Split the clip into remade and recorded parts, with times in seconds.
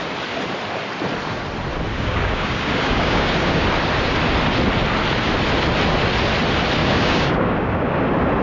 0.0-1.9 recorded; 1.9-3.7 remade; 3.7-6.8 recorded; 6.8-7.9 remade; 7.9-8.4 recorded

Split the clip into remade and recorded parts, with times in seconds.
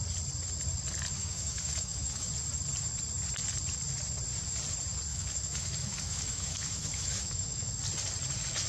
0.0-1.2 recorded; 1.2-2.3 remade; 2.3-5.1 recorded; 5.1-7.7 remade; 7.7-8.7 recorded